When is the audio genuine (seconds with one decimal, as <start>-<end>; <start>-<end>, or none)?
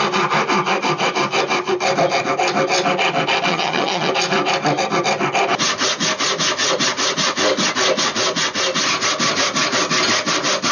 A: 0.0-3.5; 4.1-10.7